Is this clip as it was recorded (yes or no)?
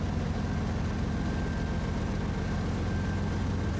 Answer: yes